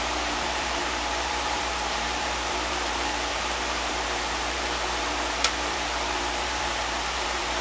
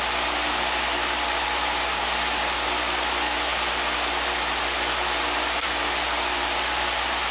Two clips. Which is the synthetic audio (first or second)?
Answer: first